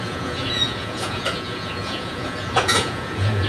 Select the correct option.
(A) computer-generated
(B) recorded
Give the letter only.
A